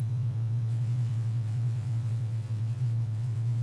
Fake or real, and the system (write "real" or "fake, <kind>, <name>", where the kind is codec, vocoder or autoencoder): fake, vocoder, WaveNeXt